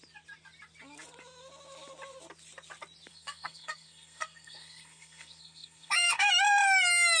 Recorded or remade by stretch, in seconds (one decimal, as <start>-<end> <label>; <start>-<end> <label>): 0.0-3.1 recorded; 3.1-6.3 remade; 6.3-7.2 recorded